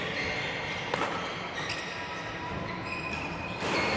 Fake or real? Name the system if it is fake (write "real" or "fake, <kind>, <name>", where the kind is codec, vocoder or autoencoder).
real